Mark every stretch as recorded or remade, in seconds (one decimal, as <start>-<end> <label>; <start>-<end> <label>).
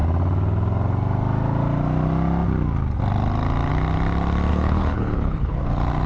0.0-4.5 recorded; 4.5-5.6 remade; 5.6-6.1 recorded